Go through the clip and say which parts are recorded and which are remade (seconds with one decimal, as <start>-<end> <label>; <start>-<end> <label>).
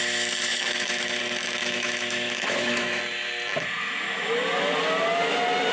0.0-0.5 recorded; 0.5-1.2 remade; 1.2-1.6 recorded; 1.6-3.0 remade; 3.0-3.8 recorded; 3.8-4.3 remade; 4.3-5.7 recorded